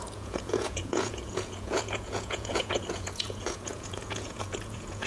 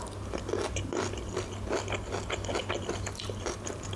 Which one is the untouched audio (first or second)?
second